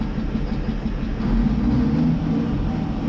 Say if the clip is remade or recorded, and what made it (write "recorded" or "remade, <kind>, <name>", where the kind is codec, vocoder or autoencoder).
recorded